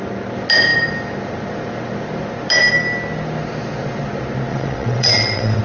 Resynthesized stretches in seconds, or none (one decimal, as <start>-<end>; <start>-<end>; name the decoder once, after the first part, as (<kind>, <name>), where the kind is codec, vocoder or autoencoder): 4.5-5.6 (vocoder, WaveNeXt)